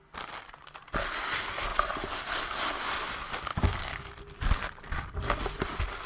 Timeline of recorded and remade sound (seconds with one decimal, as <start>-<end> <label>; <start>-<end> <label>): 0.0-1.7 recorded; 1.7-2.4 remade; 2.4-6.1 recorded